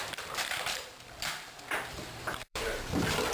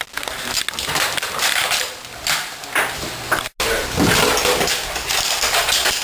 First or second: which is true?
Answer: second